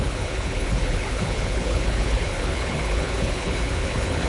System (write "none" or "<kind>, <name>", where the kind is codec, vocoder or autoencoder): codec, HILCodec